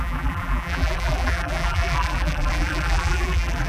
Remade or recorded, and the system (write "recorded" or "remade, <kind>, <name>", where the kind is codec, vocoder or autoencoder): remade, vocoder, BigVGAN v2